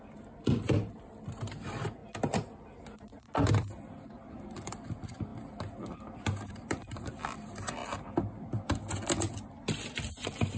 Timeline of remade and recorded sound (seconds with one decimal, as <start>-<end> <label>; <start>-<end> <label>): 0.0-2.0 remade; 2.0-4.3 recorded; 4.3-5.3 remade; 5.3-6.5 recorded; 6.5-7.8 remade; 7.8-9.2 recorded; 9.2-10.6 remade